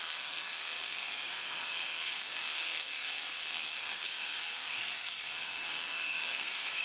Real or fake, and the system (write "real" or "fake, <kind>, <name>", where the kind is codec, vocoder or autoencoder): fake, codec, SNAC